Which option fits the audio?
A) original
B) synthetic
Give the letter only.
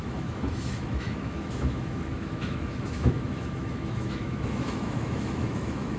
B